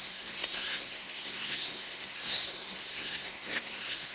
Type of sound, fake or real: fake